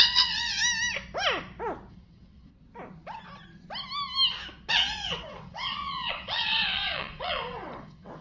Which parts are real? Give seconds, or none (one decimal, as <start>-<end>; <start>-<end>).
0.6-1.9; 2.5-4.7